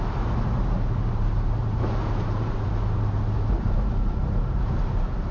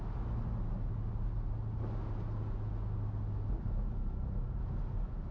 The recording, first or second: second